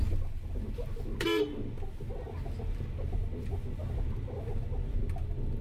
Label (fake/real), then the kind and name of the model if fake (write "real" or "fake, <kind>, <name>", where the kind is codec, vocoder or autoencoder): real